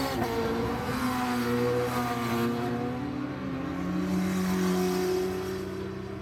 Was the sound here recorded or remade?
recorded